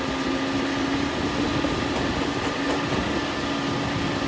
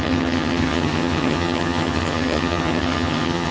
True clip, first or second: first